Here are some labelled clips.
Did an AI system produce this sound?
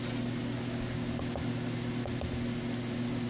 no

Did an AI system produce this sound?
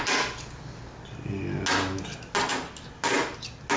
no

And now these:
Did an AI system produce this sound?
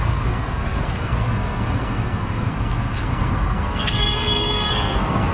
yes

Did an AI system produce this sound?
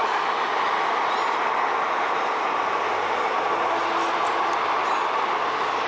no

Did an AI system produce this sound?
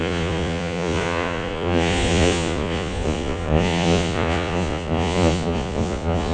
yes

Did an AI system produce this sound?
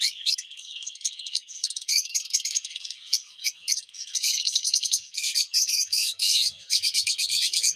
yes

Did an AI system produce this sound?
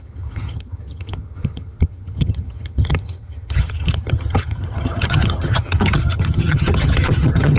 yes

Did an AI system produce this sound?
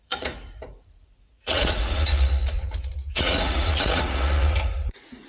yes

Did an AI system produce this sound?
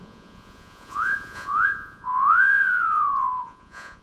yes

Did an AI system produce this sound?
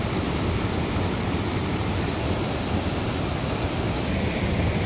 no